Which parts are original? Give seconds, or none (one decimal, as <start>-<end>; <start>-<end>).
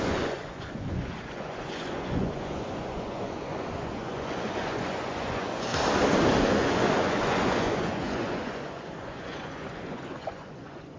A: 5.7-6.4